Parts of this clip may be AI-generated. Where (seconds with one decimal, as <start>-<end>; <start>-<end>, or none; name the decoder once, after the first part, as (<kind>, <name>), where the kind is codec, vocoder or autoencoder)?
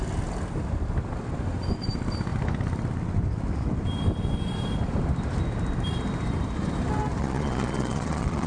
7.2-8.5 (vocoder, Vocos)